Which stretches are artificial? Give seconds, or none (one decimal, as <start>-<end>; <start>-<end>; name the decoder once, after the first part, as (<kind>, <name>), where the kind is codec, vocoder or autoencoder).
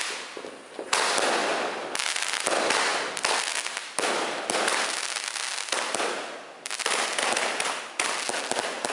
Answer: none